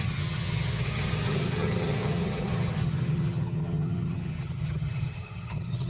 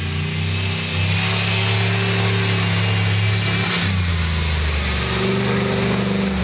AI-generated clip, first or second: first